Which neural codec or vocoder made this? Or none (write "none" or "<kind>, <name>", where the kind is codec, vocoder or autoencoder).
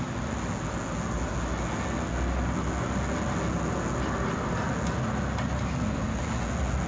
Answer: none